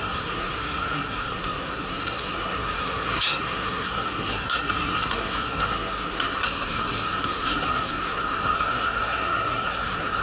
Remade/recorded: remade